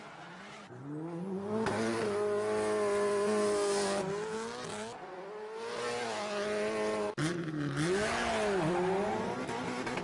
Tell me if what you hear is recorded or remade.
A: recorded